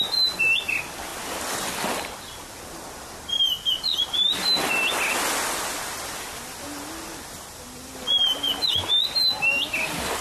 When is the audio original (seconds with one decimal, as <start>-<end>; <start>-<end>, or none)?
0.0-10.2